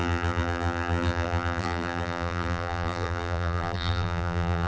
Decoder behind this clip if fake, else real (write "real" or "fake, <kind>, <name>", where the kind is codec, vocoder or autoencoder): fake, vocoder, BigVGAN v2